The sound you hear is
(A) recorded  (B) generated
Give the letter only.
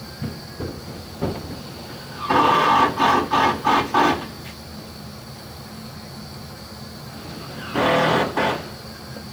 A